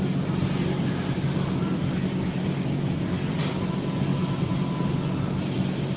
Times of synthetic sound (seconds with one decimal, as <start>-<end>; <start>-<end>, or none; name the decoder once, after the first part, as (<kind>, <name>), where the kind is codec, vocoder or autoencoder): none

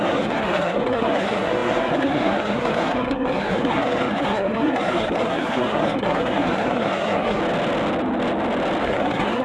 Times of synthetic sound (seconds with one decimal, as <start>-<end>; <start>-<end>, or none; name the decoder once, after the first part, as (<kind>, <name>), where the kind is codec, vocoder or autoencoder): 0.0-7.4 (codec, SNAC); 8.8-9.4

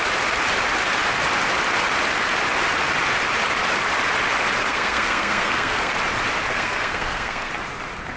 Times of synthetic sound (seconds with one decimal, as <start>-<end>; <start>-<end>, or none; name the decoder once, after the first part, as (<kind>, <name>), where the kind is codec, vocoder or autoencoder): 4.7-5.9 (codec, SNAC); 6.5-7.5

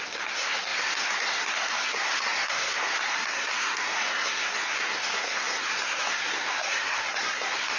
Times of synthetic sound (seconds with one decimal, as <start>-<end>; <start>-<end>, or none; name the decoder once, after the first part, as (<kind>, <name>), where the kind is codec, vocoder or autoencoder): 0.0-7.8 (codec, SNAC)

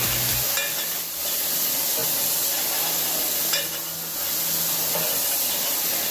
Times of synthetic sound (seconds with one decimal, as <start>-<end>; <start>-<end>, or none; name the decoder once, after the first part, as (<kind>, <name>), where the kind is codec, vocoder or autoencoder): none

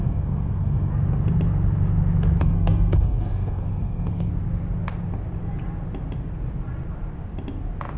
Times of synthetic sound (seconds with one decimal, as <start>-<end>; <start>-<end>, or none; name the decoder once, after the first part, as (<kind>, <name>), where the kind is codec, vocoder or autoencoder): 0.0-0.9 (codec, SNAC); 2.4-4.3